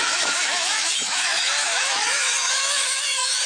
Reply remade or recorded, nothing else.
remade